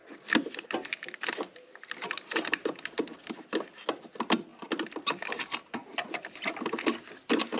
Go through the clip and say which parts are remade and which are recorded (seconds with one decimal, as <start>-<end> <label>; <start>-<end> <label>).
0.0-7.6 recorded